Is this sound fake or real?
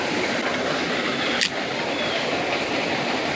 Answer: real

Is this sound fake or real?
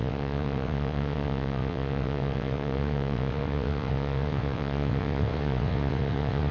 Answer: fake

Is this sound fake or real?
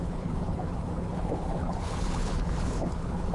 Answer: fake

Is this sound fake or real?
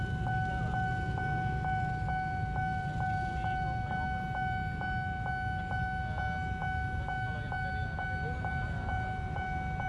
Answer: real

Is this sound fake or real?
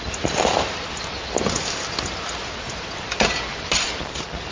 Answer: real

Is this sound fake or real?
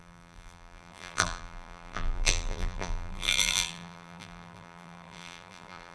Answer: fake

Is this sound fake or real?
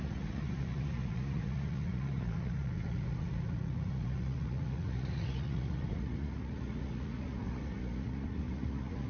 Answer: fake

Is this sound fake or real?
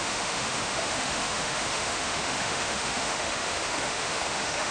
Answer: fake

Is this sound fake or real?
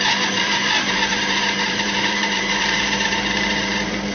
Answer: fake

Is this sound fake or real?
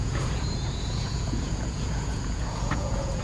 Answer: fake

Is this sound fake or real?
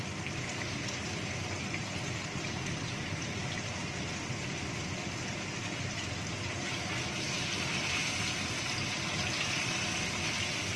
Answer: real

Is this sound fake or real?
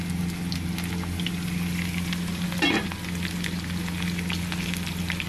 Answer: real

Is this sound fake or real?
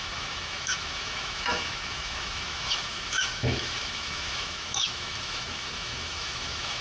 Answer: fake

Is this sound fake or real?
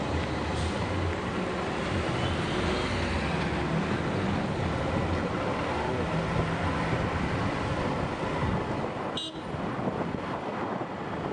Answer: real